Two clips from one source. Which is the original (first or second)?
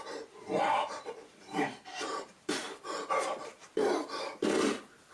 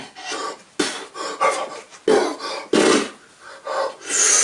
second